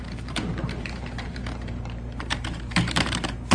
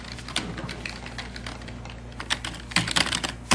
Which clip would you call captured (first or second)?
second